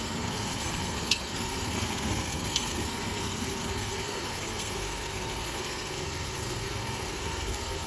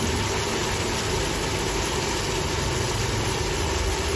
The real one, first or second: second